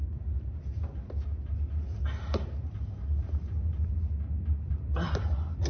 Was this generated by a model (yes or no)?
no